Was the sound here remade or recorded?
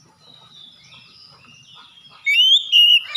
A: recorded